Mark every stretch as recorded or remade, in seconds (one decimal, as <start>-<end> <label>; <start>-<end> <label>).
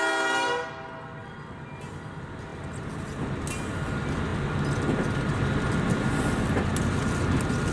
0.0-7.7 recorded